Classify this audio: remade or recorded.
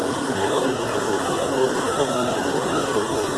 remade